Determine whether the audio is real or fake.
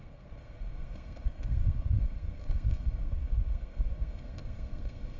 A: fake